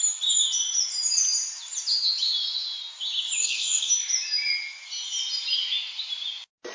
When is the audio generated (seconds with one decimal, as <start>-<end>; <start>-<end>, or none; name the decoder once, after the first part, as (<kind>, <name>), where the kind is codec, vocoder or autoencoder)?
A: 3.4-3.9 (codec, DAC)